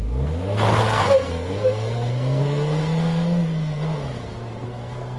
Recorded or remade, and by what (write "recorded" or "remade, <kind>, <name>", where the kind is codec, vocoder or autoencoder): remade, codec, SNAC